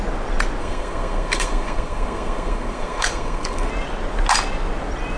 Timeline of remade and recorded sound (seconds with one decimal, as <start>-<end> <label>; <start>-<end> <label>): 0.0-0.6 recorded; 0.6-3.7 remade; 3.7-5.2 recorded